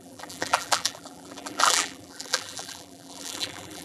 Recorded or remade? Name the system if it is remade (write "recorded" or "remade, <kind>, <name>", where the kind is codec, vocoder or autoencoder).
remade, vocoder, BigVGAN v2